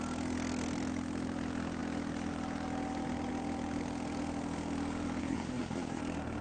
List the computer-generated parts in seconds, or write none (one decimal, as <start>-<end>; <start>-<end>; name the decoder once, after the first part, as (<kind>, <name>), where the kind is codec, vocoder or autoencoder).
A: 5.2-6.0 (codec, SNAC)